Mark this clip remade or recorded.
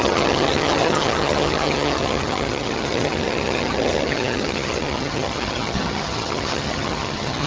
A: remade